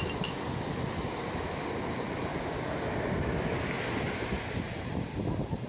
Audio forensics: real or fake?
real